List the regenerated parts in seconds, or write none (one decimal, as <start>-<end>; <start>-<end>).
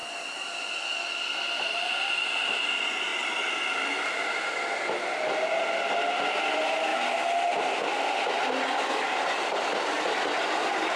none